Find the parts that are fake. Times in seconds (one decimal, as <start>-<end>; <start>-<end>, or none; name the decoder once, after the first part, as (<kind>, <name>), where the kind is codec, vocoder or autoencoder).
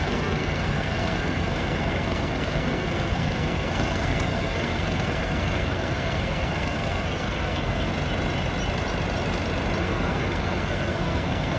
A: 0.0-7.9 (codec, SNAC); 9.8-11.6